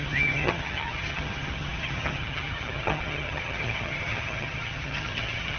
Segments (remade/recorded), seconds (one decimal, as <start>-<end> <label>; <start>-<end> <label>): 0.0-5.6 remade